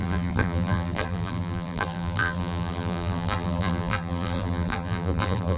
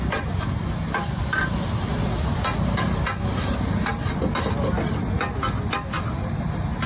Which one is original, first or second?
second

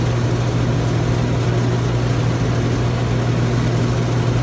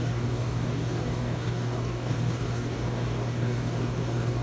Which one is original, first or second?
first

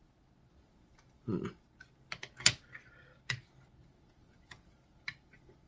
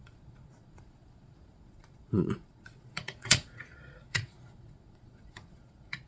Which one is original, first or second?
first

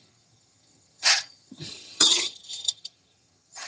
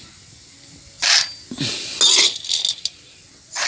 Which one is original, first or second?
second